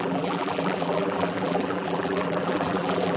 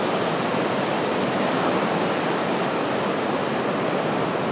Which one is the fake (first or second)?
first